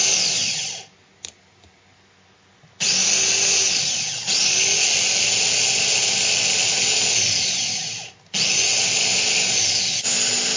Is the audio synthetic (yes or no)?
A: no